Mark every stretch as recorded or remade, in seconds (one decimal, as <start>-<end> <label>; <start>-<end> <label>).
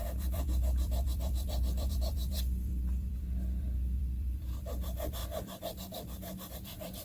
0.0-7.0 remade